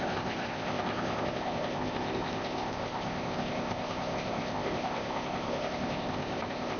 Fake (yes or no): yes